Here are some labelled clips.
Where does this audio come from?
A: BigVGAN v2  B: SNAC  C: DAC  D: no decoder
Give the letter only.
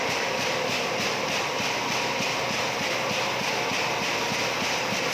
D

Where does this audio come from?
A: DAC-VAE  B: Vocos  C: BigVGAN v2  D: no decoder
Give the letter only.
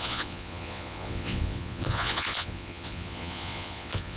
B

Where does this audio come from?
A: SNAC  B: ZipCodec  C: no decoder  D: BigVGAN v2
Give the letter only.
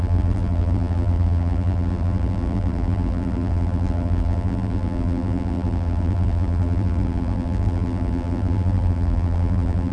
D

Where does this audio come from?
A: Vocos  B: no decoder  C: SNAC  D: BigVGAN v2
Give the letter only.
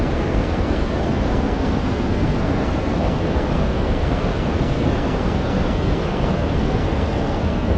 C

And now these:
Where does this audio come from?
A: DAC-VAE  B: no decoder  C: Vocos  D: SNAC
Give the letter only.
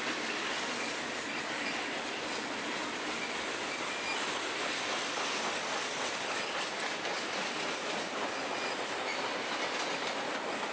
B